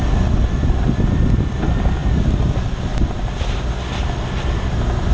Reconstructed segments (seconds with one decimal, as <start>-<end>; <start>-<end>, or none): none